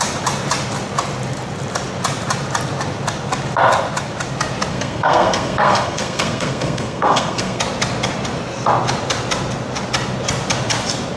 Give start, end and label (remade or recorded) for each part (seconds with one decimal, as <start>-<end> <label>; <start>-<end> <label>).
0.0-4.7 recorded; 4.7-7.6 remade; 7.6-11.2 recorded